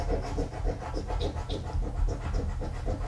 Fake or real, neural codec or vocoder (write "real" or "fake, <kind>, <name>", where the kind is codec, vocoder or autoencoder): real